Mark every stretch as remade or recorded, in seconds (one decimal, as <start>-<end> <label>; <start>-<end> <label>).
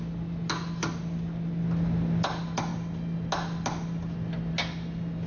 0.0-5.3 recorded